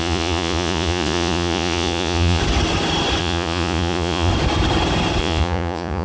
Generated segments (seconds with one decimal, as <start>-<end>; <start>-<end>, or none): 0.0-2.4; 3.2-4.3; 5.2-6.0